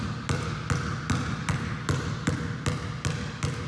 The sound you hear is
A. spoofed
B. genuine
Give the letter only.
B